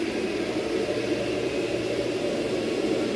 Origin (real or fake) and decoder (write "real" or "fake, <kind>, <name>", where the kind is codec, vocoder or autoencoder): fake, vocoder, BigVGAN v2